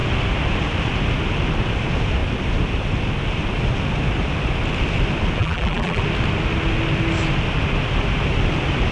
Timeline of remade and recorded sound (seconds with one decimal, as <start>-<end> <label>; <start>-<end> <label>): 0.0-5.4 recorded; 5.4-6.0 remade; 6.0-8.9 recorded